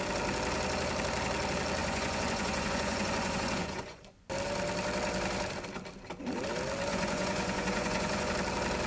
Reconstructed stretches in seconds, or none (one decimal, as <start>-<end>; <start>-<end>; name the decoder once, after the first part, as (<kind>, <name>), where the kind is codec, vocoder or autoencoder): 1.8-4.3 (vocoder, Vocos); 6.9-8.3